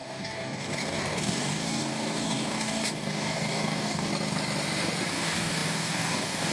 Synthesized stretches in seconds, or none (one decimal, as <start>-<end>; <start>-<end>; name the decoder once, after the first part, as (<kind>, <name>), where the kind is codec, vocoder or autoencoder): 0.0-4.1 (codec, DAC); 5.1-6.5